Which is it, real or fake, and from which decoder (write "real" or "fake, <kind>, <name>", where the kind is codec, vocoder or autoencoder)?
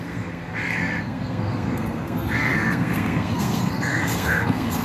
fake, codec, SNAC